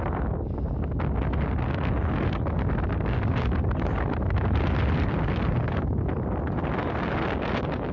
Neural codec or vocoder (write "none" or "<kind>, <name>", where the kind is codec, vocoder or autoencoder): none